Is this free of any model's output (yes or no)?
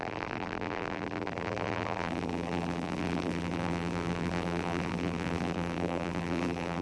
no